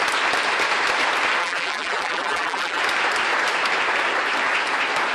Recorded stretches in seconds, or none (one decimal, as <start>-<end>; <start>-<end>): 0.0-1.4; 2.8-5.1